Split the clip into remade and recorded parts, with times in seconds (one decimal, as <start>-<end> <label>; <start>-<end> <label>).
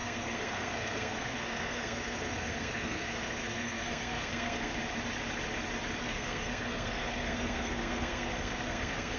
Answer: 0.0-4.8 remade; 4.8-6.0 recorded; 6.0-9.2 remade